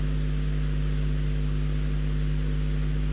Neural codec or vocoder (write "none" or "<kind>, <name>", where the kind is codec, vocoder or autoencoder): none